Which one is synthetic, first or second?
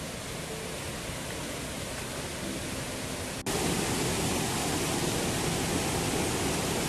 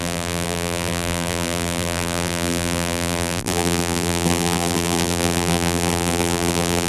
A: second